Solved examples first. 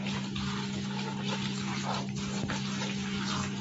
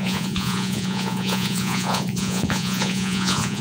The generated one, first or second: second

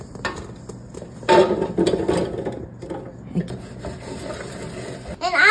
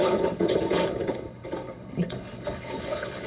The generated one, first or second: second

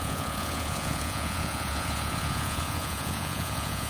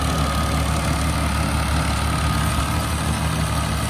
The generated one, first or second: first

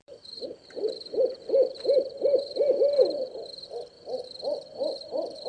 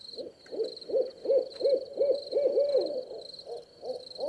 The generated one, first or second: first